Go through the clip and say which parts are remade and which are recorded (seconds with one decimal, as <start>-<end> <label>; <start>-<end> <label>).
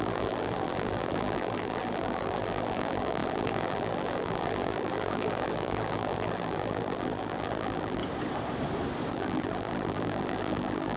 0.0-8.0 remade; 8.0-9.1 recorded; 9.1-11.0 remade